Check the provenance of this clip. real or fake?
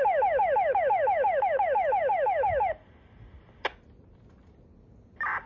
real